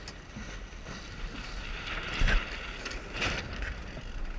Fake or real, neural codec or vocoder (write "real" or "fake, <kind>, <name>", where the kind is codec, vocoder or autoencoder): real